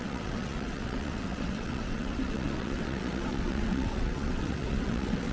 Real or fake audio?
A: fake